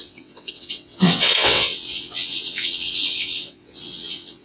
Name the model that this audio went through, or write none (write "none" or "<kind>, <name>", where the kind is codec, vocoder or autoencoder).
vocoder, WaveNeXt